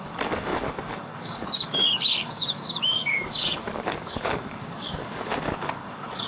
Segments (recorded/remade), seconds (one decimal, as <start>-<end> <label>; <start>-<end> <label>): 0.0-6.3 remade